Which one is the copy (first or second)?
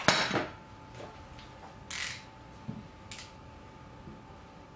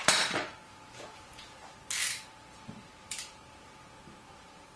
second